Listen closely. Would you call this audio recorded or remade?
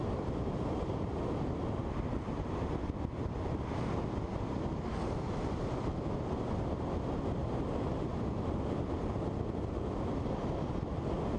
recorded